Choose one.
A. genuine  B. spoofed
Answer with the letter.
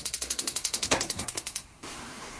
B